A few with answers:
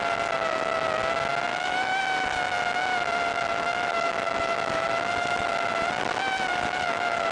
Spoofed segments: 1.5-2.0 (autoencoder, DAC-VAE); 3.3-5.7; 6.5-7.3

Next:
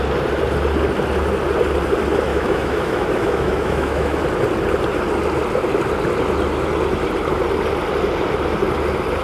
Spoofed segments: 2.3-4.2 (autoencoder, DAC-VAE)

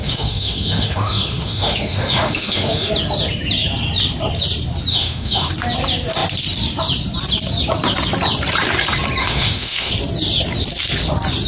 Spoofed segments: 0.0-2.9 (autoencoder, DAC-VAE); 4.9-5.5; 9.2-9.9

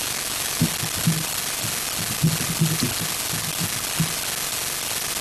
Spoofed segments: 0.0-0.6 (autoencoder, DAC-VAE)

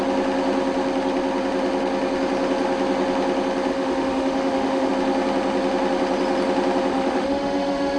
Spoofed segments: 3.7-4.9 (autoencoder, DAC-VAE); 6.9-8.0